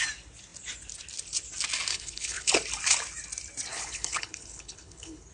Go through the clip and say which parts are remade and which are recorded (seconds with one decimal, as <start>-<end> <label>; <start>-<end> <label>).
0.0-1.9 recorded; 1.9-2.5 remade; 2.5-3.7 recorded; 3.7-5.3 remade